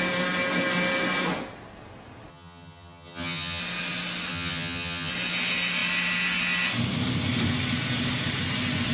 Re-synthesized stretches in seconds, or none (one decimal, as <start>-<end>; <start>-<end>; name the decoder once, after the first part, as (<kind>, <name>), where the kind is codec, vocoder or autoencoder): 2.3-3.6 (vocoder, HiFi-GAN); 4.3-5.1